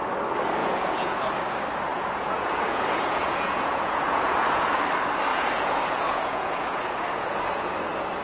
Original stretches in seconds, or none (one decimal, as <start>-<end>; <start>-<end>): 0.0-0.6; 1.2-1.9; 4.8-5.3; 7.7-8.2